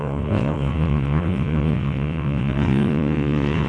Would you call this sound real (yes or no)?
no